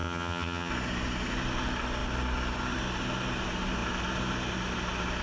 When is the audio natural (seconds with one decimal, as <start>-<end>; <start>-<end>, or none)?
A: 0.7-5.2